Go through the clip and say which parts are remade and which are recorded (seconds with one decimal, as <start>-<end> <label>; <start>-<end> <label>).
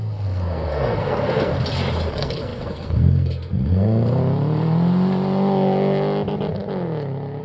0.0-1.5 remade; 1.5-2.1 recorded; 2.1-4.2 remade; 4.2-7.4 recorded